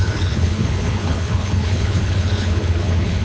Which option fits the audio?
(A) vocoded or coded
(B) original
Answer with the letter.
A